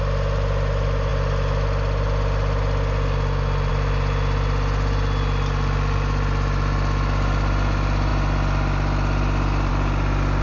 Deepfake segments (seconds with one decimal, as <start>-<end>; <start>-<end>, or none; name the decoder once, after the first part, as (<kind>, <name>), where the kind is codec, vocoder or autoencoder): none